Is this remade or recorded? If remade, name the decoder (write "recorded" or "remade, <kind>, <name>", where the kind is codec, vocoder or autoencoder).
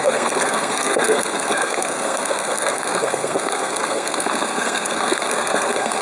remade, codec, SNAC